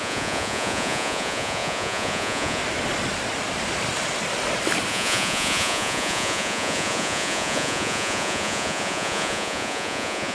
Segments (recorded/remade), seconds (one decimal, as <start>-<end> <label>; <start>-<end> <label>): 0.0-2.6 remade; 2.6-4.9 recorded; 4.9-10.3 remade

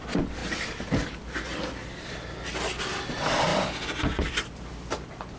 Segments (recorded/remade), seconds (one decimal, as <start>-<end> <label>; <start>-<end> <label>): 0.0-5.4 recorded